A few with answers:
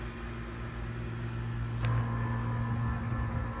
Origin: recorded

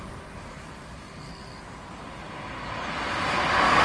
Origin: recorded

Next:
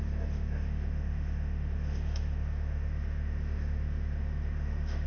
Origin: remade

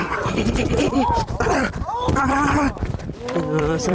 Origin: remade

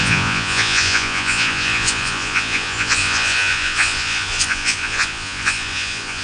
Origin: remade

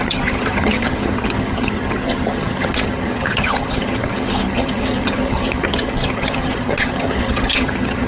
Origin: remade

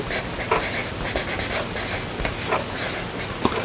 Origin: recorded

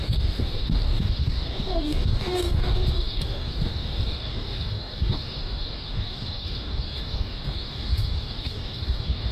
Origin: remade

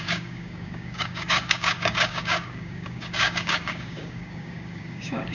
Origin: remade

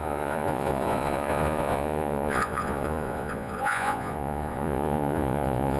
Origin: remade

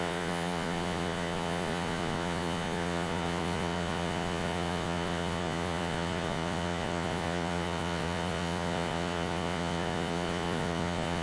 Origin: remade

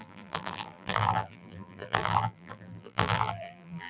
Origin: remade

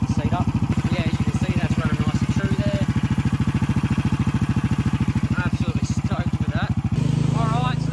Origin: recorded